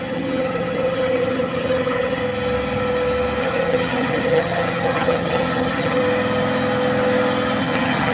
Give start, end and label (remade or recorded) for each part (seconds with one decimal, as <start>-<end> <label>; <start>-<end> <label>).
0.0-2.2 remade; 2.2-3.4 recorded; 3.4-6.0 remade; 6.0-7.6 recorded; 7.6-8.1 remade